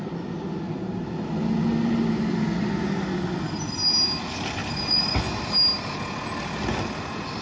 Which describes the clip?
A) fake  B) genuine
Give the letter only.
B